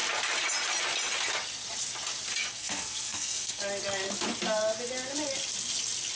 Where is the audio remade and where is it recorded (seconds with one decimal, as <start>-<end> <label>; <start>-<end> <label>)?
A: 0.0-2.4 recorded; 2.4-3.6 remade; 3.6-6.1 recorded